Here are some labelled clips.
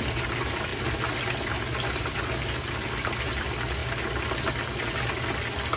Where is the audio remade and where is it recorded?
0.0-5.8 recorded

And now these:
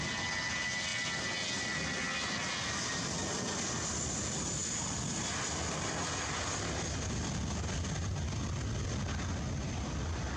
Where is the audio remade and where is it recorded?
0.0-10.4 recorded

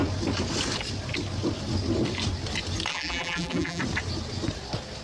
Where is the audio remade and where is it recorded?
0.0-2.9 recorded; 2.9-3.8 remade; 3.8-5.0 recorded

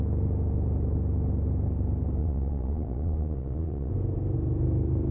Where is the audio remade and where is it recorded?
0.0-2.2 recorded; 2.2-3.9 remade; 3.9-5.1 recorded